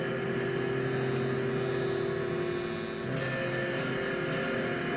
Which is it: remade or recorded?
recorded